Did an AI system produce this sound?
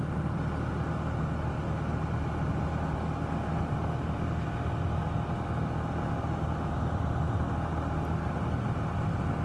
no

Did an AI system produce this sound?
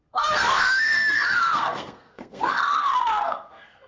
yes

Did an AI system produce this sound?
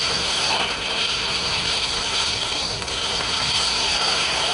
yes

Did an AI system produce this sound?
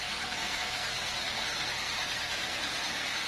yes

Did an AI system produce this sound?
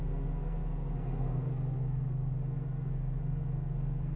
yes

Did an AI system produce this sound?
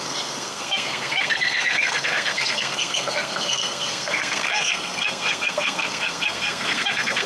yes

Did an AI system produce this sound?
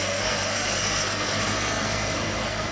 yes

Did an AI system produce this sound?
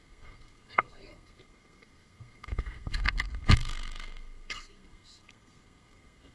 yes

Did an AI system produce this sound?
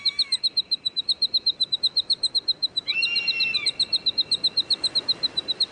no